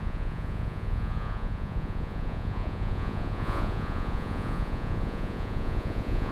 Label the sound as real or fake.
fake